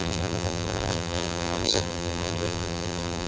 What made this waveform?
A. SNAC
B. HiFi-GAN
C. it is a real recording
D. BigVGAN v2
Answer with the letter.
D